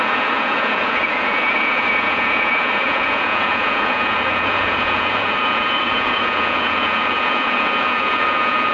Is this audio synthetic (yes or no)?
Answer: yes